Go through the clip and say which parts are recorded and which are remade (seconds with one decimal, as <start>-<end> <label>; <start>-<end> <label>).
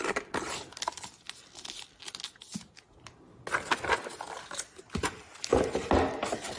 0.0-2.5 remade; 2.5-5.0 recorded; 5.0-5.5 remade; 5.5-6.6 recorded